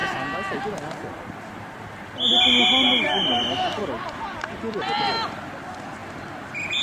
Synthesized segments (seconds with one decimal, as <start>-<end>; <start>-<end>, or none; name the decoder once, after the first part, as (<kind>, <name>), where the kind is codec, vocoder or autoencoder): 3.8-5.4 (vocoder, BigVGAN v2)